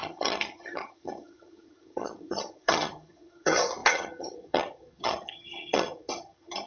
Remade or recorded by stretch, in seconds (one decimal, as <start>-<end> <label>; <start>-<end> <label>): 0.0-6.7 remade